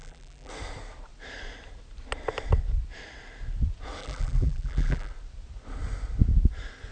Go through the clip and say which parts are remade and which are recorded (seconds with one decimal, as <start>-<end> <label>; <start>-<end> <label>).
0.0-0.5 remade; 0.5-4.0 recorded; 4.0-5.1 remade; 5.1-6.9 recorded